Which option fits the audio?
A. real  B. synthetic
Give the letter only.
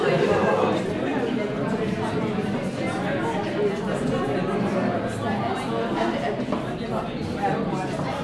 A